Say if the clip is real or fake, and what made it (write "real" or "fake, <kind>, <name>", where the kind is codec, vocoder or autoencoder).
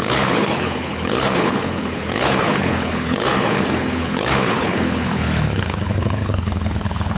fake, codec, HILCodec